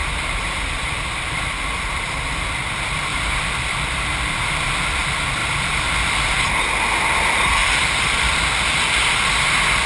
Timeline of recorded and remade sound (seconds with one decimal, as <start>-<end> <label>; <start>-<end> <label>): 0.0-1.6 remade; 1.6-3.1 recorded; 3.1-4.1 remade; 4.1-5.4 recorded; 5.4-6.6 remade; 6.6-7.6 recorded; 7.6-9.1 remade; 9.1-9.9 recorded